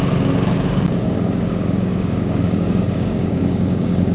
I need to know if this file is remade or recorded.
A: remade